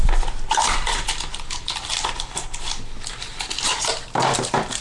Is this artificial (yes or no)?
no